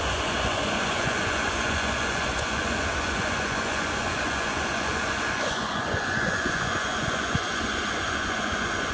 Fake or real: fake